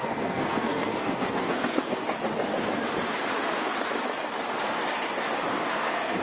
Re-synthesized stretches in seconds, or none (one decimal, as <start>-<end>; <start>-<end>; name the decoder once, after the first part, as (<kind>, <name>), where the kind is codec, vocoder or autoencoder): 0.0-2.0 (codec, SNAC); 5.7-6.2